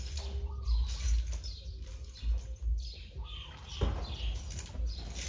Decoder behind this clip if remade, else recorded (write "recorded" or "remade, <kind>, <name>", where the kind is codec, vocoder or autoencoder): recorded